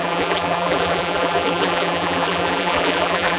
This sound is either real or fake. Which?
fake